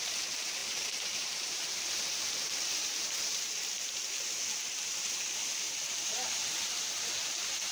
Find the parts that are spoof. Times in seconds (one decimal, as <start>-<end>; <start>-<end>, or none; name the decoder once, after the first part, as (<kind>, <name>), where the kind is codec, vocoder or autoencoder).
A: 0.0-7.7 (vocoder, BigVGAN v2)